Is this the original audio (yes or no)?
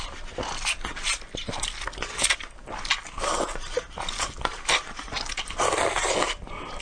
yes